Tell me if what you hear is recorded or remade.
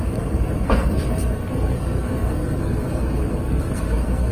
remade